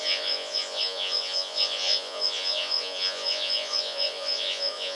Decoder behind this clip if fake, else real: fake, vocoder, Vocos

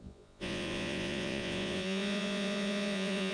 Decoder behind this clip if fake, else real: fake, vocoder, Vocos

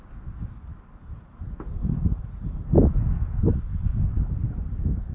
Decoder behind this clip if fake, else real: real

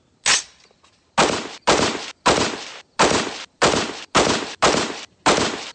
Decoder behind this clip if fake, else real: real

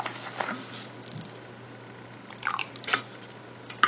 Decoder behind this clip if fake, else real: real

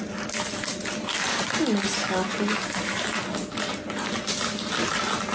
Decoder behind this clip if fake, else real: real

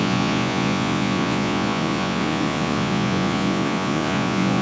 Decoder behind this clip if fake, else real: fake, vocoder, Vocos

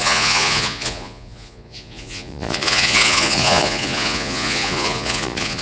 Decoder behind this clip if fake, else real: fake, vocoder, Vocos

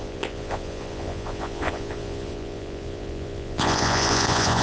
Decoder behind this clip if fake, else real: fake, vocoder, Vocos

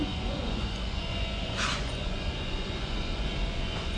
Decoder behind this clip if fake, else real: fake, vocoder, Vocos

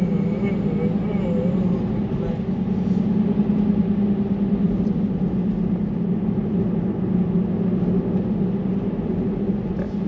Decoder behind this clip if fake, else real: real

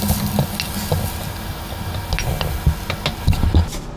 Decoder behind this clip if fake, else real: real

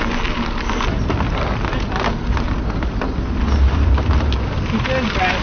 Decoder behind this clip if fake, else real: real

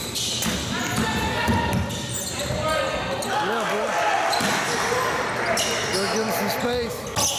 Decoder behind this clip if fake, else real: real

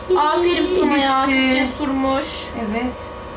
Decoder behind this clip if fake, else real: real